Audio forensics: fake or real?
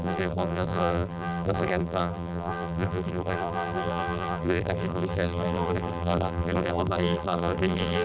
fake